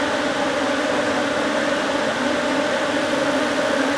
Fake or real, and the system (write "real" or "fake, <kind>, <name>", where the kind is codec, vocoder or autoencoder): real